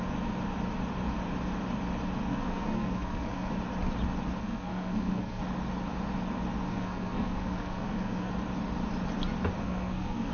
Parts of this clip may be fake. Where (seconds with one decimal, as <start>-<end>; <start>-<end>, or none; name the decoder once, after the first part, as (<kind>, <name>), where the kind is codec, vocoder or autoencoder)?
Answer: 2.3-3.5 (codec, SNAC); 4.4-5.4; 6.7-8.3; 9.6-10.3